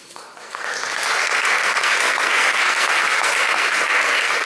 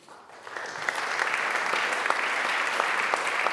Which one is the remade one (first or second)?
first